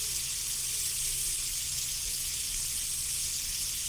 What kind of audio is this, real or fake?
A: real